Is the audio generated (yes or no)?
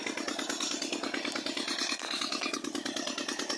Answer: no